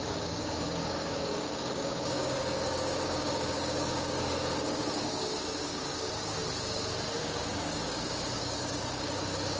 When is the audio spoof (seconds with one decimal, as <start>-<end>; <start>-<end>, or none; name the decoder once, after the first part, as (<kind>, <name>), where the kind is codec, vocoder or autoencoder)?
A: 0.0-6.4 (codec, DAC); 7.2-9.6